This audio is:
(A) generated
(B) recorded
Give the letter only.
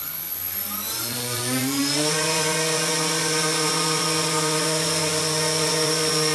A